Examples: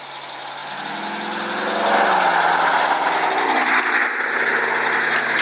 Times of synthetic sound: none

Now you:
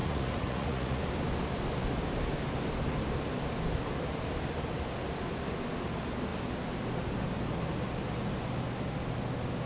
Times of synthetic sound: 0.0-1.0